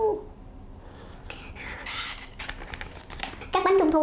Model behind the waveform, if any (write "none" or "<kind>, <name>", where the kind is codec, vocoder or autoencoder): none